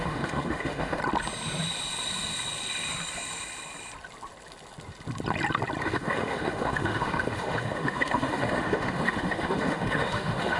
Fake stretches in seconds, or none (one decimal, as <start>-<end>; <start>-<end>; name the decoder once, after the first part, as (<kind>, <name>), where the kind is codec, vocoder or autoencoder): 0.0-1.0 (autoencoder, DAC-VAE); 5.8-10.6